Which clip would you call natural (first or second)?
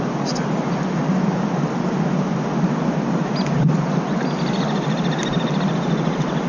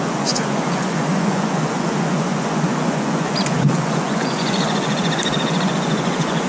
first